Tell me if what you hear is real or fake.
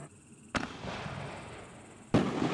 real